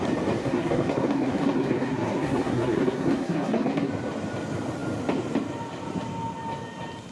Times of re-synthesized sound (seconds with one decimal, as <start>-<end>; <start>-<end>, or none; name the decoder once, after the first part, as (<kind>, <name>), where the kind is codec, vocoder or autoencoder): 0.4-3.9 (codec, SNAC)